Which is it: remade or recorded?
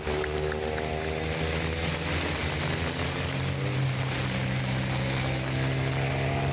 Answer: recorded